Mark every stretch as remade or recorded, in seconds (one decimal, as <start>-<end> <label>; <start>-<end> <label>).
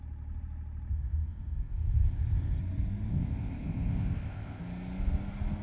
0.0-0.9 recorded; 0.9-2.6 remade; 2.6-3.1 recorded; 3.1-4.6 remade; 4.6-5.6 recorded